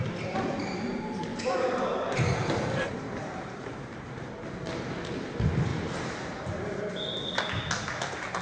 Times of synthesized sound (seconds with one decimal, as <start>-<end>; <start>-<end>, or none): 1.3-4.3; 5.7-6.9